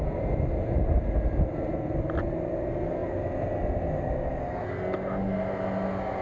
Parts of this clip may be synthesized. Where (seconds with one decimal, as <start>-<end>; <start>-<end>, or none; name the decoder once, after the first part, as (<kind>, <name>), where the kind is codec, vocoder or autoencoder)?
none